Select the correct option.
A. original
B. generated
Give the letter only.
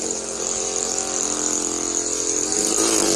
A